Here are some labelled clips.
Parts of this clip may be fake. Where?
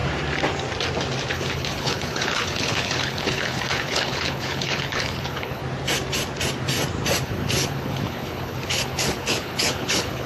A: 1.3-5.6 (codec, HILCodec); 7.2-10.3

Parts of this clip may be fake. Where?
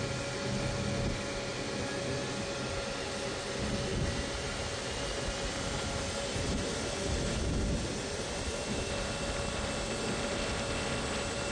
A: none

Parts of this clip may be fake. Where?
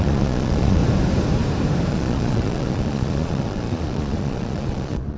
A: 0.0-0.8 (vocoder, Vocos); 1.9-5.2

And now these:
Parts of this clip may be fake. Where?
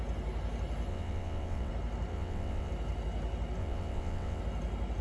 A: 0.9-1.7 (vocoder, WaveNeXt); 2.1-2.7; 3.6-4.4